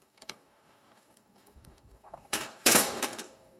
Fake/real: fake